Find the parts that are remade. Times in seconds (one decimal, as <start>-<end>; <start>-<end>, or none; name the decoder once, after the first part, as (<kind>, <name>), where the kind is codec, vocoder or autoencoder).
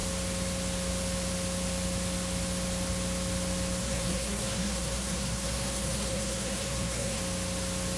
3.8-7.2 (codec, SNAC)